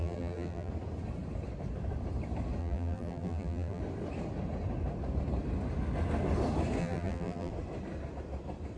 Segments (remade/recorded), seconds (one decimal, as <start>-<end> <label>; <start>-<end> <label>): 0.0-0.7 remade; 0.7-2.6 recorded; 2.6-3.8 remade; 3.8-6.8 recorded; 6.8-7.5 remade; 7.5-8.8 recorded

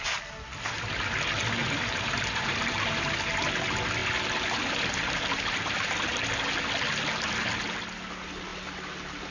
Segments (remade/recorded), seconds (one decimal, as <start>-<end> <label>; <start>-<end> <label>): 0.0-1.6 recorded; 1.6-2.8 remade; 2.8-9.3 recorded

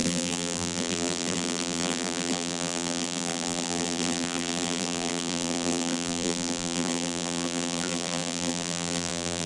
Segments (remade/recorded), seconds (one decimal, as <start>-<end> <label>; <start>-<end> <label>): 0.0-9.5 remade

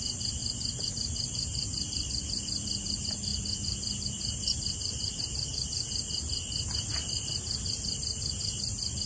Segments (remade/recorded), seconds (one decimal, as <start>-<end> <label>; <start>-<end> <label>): 0.0-1.5 recorded; 1.5-2.1 remade; 2.1-3.3 recorded; 3.3-5.2 remade; 5.2-6.9 recorded; 6.9-8.0 remade; 8.0-9.1 recorded

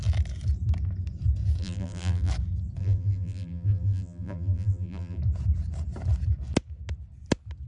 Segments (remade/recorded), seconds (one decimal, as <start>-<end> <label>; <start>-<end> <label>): 0.0-1.6 recorded; 1.6-2.3 remade; 2.3-2.8 recorded; 2.8-5.2 remade; 5.2-7.7 recorded

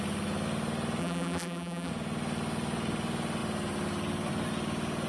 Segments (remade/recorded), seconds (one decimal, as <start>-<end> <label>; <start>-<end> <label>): 0.0-1.0 recorded; 1.0-1.9 remade; 1.9-5.1 recorded

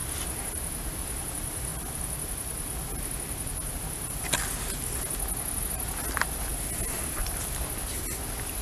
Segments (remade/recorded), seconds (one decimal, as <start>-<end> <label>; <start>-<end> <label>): 0.0-8.6 recorded